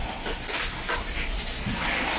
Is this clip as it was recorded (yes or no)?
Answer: no